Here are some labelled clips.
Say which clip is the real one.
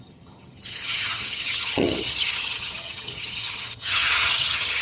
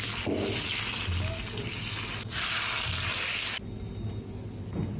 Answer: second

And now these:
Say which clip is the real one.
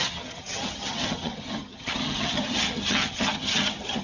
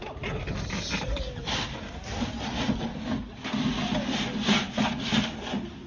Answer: second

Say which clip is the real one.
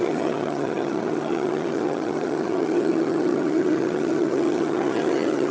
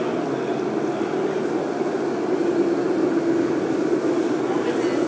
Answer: second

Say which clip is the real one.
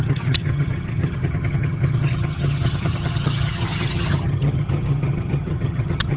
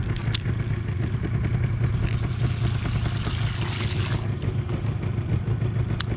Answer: second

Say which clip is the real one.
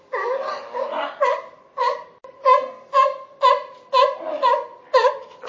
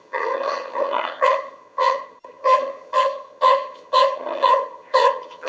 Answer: first